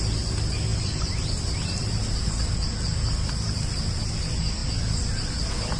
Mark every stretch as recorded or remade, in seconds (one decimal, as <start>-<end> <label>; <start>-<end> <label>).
0.0-0.7 recorded; 0.7-2.3 remade; 2.3-5.8 recorded

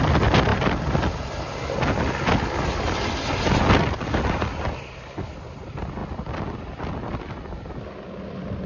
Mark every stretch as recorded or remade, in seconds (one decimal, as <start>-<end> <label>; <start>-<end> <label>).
0.0-8.7 recorded

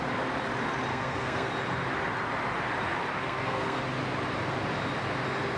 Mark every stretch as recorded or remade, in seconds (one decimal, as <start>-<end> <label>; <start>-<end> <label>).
0.0-0.9 recorded; 0.9-1.5 remade; 1.5-3.2 recorded; 3.2-3.8 remade; 3.8-5.6 recorded